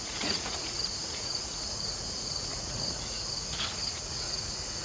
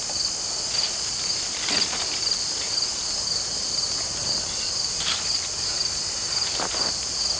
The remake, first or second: first